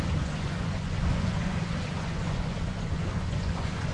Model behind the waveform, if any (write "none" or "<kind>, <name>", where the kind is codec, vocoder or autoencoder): vocoder, Vocos